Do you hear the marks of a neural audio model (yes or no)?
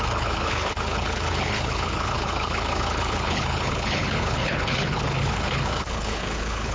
yes